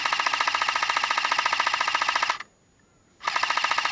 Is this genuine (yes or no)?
yes